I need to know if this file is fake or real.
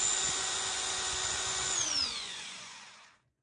fake